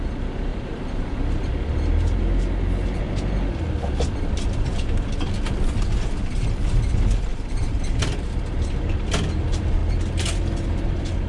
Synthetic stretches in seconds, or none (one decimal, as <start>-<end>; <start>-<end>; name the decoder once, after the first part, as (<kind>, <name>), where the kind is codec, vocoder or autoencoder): 0.5-2.2 (vocoder, BigVGAN v2); 7.3-8.7